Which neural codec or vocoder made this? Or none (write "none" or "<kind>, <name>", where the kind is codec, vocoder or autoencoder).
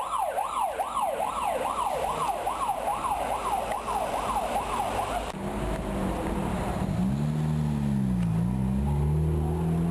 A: none